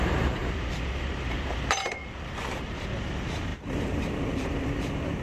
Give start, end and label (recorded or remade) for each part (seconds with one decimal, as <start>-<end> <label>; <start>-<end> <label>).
0.0-2.0 remade; 2.0-2.5 recorded; 2.5-5.2 remade

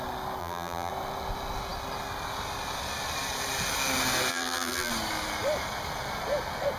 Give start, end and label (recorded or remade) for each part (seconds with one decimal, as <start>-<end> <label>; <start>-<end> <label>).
0.0-0.4 recorded; 0.4-0.9 remade; 0.9-4.3 recorded; 4.3-4.9 remade; 4.9-6.8 recorded